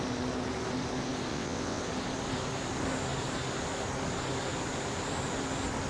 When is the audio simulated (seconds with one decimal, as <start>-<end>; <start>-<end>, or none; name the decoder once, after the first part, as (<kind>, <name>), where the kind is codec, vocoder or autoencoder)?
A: 1.3-1.8 (vocoder, WaveNeXt)